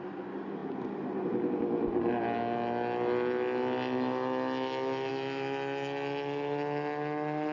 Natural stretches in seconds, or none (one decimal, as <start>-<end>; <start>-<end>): 0.0-7.5